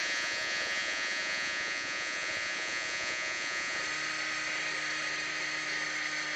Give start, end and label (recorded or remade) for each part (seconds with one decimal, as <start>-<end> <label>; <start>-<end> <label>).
0.0-3.8 remade; 3.8-6.4 recorded